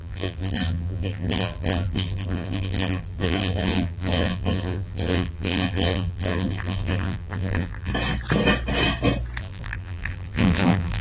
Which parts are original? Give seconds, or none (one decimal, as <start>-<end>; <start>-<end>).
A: 7.9-9.4